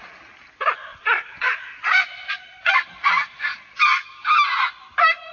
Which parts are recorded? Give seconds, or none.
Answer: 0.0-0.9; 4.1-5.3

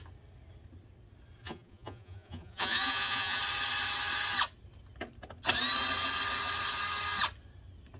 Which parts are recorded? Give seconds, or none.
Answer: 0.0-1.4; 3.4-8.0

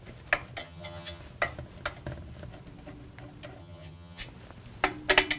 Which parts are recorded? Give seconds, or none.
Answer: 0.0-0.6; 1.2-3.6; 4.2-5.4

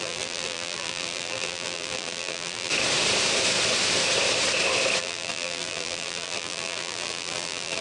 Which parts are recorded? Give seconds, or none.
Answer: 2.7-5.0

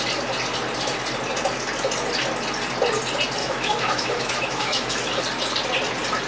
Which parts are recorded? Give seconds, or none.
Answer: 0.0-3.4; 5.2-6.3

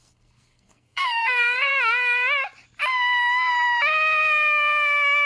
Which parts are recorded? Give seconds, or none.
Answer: 1.7-5.3

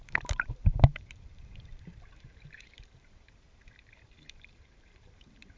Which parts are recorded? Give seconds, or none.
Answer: none